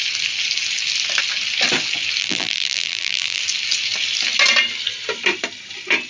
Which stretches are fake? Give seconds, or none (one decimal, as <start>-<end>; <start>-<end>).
2.2-3.4

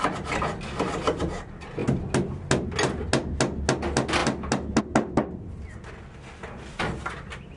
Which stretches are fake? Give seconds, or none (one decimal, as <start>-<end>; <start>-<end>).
none

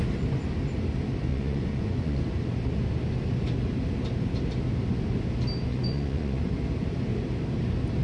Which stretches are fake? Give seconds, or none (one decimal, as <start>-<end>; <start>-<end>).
1.3-2.2; 5.7-6.4

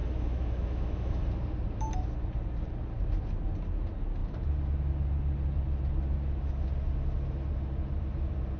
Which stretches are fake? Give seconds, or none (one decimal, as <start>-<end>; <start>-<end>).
0.0-1.2